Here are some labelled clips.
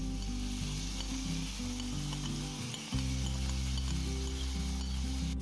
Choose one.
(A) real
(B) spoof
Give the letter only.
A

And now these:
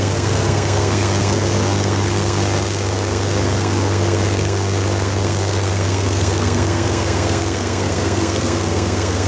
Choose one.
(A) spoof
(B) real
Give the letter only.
A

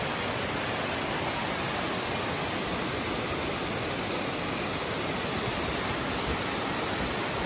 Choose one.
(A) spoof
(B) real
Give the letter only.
B